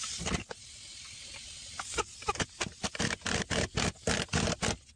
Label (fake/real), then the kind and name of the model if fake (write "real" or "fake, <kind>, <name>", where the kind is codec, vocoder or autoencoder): real